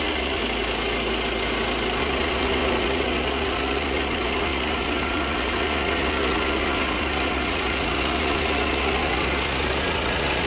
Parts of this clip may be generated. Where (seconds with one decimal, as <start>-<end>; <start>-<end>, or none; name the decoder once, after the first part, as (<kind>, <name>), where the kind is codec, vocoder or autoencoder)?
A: 0.0-0.4 (vocoder, Vocos); 2.0-10.5